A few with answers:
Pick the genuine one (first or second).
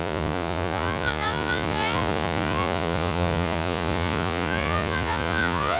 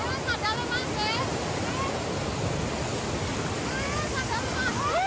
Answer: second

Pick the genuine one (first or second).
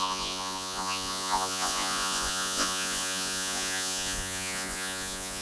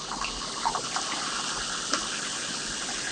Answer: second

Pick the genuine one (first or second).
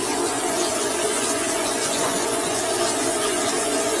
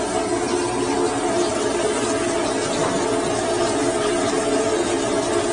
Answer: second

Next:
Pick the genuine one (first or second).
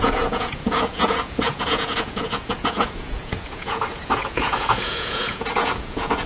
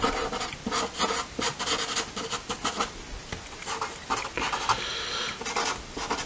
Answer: second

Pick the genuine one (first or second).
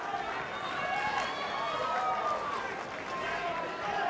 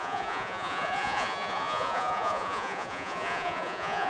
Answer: first